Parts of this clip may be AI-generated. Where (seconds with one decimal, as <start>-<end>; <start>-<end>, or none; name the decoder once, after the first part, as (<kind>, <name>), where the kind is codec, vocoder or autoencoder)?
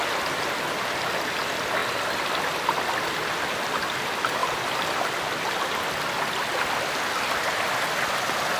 none